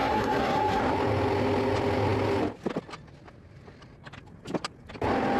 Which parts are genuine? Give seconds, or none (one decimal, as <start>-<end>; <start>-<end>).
0.8-5.4